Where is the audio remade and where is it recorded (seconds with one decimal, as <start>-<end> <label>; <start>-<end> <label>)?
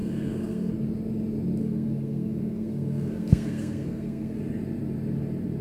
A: 0.0-0.7 remade; 0.7-1.6 recorded; 1.6-4.4 remade; 4.4-5.6 recorded